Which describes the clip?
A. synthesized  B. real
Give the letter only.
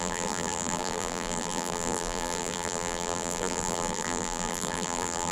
A